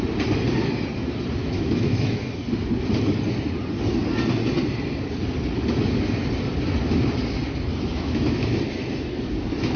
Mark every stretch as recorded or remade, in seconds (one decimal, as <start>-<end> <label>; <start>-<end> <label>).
0.0-1.4 recorded; 1.4-2.3 remade; 2.3-7.9 recorded; 7.9-8.6 remade; 8.6-9.8 recorded